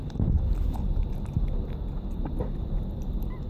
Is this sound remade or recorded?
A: recorded